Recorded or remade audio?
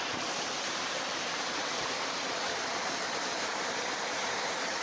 remade